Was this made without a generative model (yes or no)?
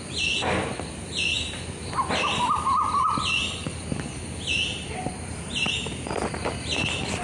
yes